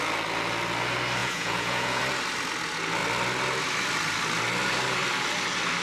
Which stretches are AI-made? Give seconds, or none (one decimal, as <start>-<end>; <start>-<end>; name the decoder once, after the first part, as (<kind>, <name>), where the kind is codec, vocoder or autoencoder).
1.2-2.0 (vocoder, Vocos)